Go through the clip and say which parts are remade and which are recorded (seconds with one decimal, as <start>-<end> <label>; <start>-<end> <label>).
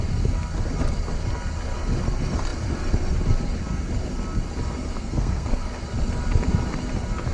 0.0-5.0 recorded; 5.0-5.6 remade; 5.6-7.3 recorded